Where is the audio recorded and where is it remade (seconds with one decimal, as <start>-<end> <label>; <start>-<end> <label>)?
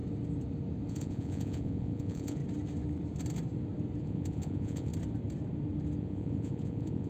0.0-0.9 recorded; 0.9-2.4 remade; 2.4-4.0 recorded; 4.0-4.9 remade; 4.9-6.0 recorded; 6.0-7.1 remade